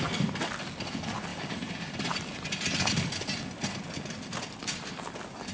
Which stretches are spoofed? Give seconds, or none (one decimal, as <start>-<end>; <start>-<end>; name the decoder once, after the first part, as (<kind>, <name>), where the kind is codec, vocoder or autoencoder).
none